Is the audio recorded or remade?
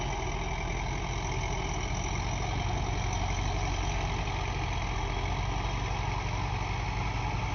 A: recorded